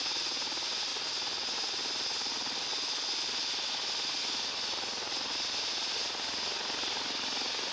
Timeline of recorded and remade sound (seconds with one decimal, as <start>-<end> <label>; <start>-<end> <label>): 0.0-7.7 recorded